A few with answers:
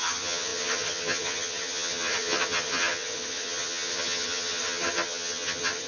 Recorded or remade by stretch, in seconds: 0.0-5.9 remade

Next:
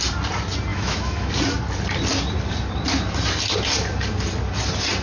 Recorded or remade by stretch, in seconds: 0.0-0.7 recorded; 0.7-1.3 remade; 1.3-5.0 recorded

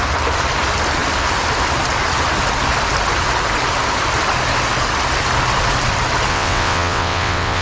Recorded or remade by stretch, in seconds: 0.0-6.3 recorded; 6.3-7.6 remade

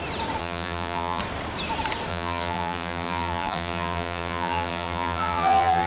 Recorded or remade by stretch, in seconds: 0.0-0.4 recorded; 0.4-1.2 remade; 1.2-2.1 recorded; 2.1-5.9 remade